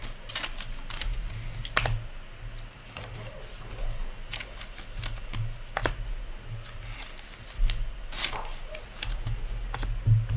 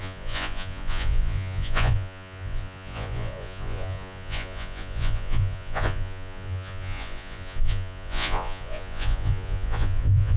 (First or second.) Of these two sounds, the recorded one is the first